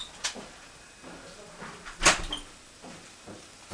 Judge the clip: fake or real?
real